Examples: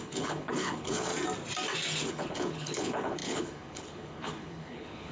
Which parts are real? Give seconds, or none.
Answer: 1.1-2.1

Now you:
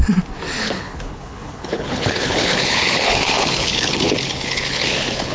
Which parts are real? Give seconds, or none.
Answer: 0.0-0.6

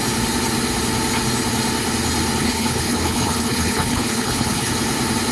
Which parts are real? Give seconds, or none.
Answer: 0.0-2.4; 4.7-5.3

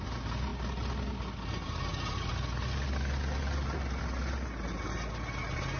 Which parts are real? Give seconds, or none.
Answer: 0.0-5.8

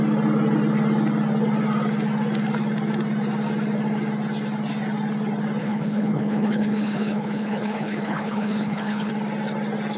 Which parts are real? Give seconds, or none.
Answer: 0.0-5.6; 9.1-10.0